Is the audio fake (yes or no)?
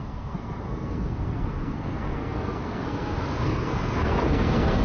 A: yes